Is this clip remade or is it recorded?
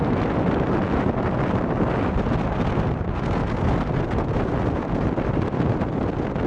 recorded